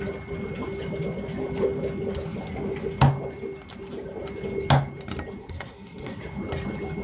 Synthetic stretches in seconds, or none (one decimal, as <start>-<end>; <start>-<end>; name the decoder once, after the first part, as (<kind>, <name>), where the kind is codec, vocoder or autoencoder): 5.4-6.2 (codec, SNAC)